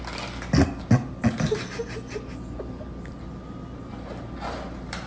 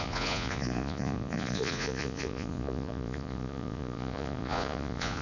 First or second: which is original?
first